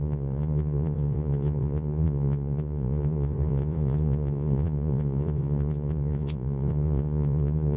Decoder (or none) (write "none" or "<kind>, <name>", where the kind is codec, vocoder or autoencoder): vocoder, Vocos